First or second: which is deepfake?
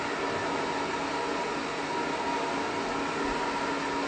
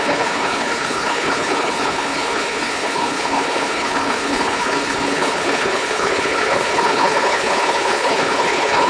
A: second